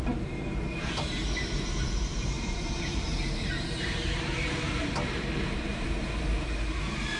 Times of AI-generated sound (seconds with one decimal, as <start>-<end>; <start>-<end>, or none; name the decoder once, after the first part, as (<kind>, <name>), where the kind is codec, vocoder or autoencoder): 0.0-7.2 (vocoder, BigVGAN v2)